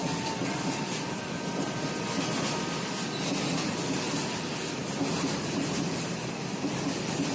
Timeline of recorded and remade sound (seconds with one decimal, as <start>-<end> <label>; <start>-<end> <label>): 0.0-7.3 recorded